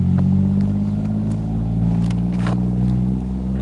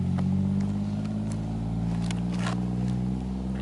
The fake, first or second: first